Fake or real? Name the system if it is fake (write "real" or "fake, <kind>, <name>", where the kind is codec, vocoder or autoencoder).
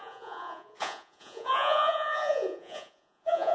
fake, vocoder, Vocos